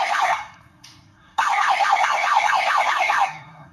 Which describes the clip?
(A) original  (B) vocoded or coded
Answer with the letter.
B